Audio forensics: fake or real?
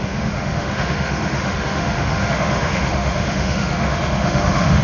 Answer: fake